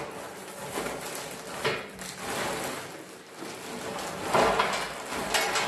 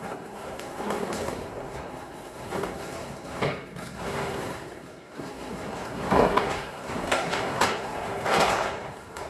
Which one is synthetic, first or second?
second